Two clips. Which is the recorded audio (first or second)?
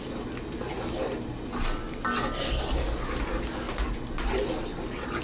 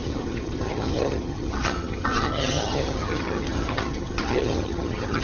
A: first